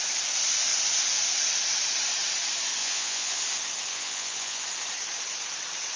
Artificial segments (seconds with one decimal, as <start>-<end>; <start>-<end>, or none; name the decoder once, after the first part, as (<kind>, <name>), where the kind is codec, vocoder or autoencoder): 2.8-3.4 (vocoder, Vocos); 3.9-4.6

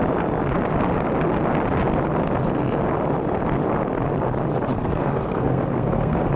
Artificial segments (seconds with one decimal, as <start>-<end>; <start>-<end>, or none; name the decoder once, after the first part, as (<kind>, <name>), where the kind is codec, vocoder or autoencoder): 4.7-6.4 (codec, SNAC)

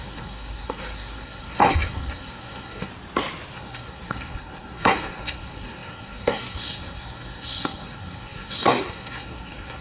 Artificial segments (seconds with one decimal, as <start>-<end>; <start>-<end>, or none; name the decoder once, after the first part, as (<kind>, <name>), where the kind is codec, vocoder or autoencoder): 0.0-2.9 (codec, SNAC); 3.5-9.8

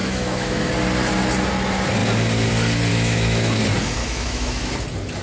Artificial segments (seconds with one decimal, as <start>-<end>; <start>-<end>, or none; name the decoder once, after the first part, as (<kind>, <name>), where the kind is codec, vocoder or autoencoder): 0.0-0.7 (autoencoder, DAC-VAE); 2.9-3.6; 4.0-4.7